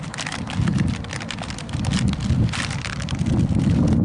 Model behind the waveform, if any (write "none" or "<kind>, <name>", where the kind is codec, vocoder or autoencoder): none